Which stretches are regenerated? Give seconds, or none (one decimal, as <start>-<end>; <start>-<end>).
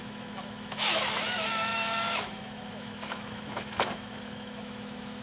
0.0-5.2